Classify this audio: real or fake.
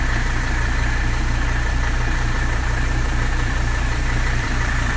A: fake